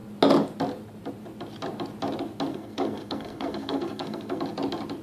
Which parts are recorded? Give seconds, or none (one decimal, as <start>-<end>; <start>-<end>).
0.0-2.5; 4.4-5.0